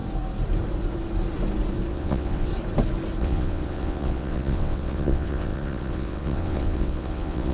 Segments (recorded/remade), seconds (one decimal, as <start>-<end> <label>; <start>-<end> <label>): 0.0-1.9 recorded; 1.9-2.5 remade; 2.5-3.2 recorded; 3.2-7.5 remade